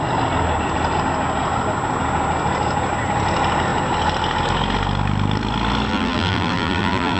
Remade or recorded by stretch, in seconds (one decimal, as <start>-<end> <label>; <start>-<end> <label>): 0.0-5.9 recorded; 5.9-7.2 remade